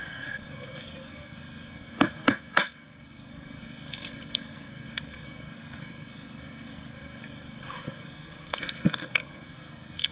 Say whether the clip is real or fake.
fake